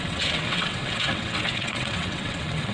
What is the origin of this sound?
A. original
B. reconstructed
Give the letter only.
B